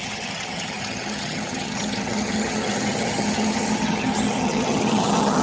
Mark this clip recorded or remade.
remade